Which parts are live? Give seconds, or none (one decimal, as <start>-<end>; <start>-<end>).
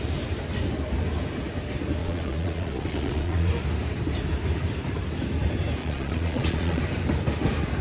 0.0-2.0; 3.5-5.8; 6.8-7.8